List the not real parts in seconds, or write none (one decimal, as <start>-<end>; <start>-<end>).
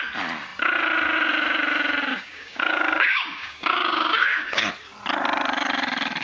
2.1-4.7